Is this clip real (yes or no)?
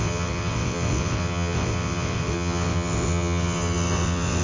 no